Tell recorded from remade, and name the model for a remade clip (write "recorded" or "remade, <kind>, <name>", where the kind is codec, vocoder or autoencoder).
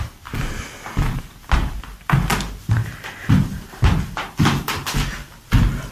recorded